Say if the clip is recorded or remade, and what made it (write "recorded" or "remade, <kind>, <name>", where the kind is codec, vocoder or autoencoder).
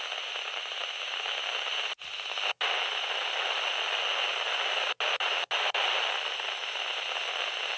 recorded